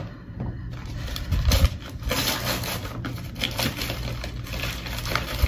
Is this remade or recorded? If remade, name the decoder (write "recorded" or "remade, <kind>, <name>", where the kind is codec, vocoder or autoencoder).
remade, vocoder, BigVGAN v2